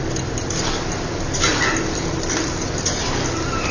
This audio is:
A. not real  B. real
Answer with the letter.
B